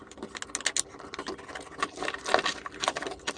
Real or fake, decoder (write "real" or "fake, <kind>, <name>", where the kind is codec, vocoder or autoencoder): real